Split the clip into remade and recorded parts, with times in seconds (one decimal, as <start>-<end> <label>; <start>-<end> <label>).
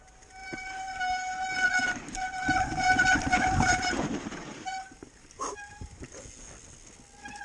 0.0-0.4 recorded; 0.4-1.0 remade; 1.0-1.8 recorded; 1.8-6.2 remade; 6.2-7.4 recorded